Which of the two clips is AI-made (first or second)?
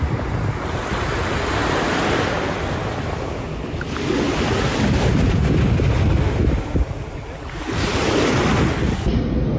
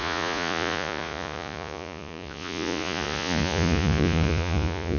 second